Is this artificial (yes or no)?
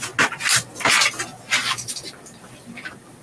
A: no